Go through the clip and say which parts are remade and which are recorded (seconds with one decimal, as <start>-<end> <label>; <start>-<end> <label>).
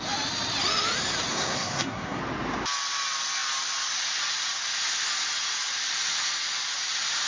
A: 0.0-1.3 recorded; 1.3-2.2 remade; 2.2-7.3 recorded